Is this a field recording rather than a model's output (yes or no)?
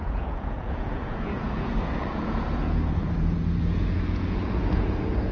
no